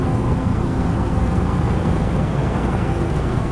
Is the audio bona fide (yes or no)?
no